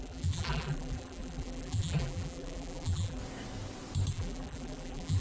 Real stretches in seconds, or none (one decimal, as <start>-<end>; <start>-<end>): 3.2-4.1